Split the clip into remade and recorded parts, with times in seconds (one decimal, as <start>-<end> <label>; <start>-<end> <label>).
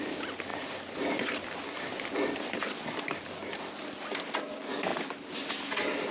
0.0-6.1 recorded